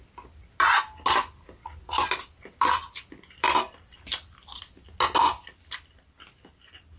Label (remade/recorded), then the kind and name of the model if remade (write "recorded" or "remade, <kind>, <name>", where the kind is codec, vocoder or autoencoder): recorded